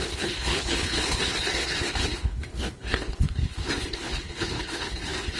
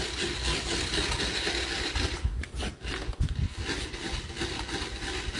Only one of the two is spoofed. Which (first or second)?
first